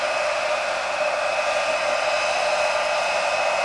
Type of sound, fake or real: real